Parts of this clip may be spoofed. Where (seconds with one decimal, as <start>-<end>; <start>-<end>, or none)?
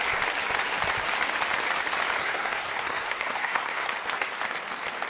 2.2-3.9